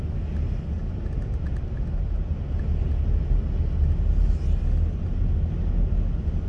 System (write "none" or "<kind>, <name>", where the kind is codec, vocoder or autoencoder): none